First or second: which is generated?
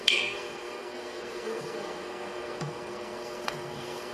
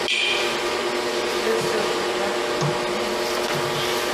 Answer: first